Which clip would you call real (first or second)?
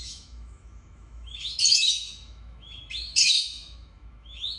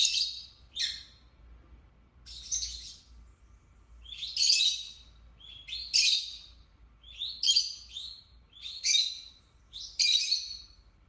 second